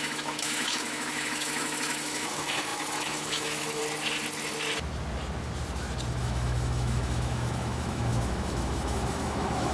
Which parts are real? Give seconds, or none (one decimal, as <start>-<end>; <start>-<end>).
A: 3.8-6.2